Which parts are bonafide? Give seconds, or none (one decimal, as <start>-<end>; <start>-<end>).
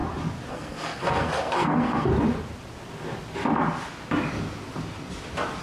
0.0-0.5; 2.1-5.6